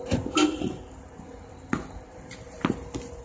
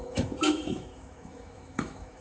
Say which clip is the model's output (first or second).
second